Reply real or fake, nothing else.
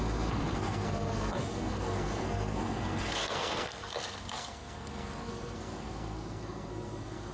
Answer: fake